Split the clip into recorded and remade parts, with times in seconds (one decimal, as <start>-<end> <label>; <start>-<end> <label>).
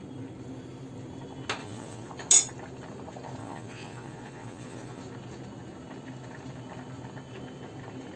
0.0-1.6 recorded; 1.6-2.1 remade; 2.1-3.4 recorded; 3.4-5.0 remade; 5.0-8.2 recorded